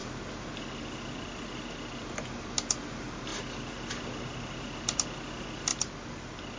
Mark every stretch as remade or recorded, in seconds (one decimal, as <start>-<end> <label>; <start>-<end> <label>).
0.0-6.6 recorded